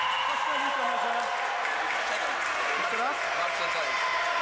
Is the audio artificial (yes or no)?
no